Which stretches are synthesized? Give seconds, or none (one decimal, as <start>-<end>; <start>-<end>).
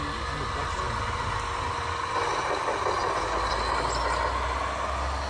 none